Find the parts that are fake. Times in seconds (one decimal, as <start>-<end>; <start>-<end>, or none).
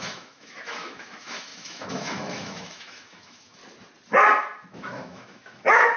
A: 0.0-3.6; 4.7-6.0